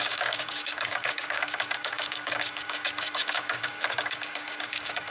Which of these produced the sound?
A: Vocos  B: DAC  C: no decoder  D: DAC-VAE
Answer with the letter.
B